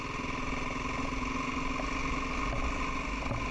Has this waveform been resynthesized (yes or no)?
no